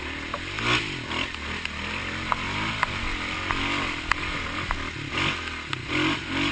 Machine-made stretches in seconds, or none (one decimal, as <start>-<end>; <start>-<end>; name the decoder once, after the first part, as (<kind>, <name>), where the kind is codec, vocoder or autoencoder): none